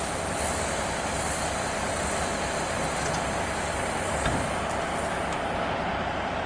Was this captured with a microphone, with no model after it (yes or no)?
yes